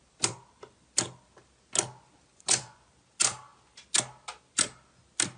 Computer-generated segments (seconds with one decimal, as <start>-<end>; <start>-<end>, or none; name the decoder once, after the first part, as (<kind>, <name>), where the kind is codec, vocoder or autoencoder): 2.3-2.9 (vocoder, Vocos)